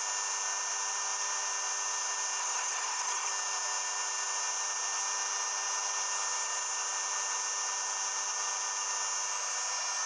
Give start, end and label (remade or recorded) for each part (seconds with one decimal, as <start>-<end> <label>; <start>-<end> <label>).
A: 0.0-2.4 recorded; 2.4-3.3 remade; 3.3-10.1 recorded